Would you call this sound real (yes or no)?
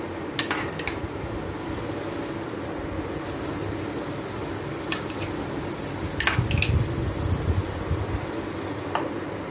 yes